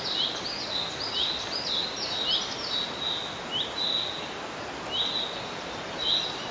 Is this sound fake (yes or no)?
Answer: no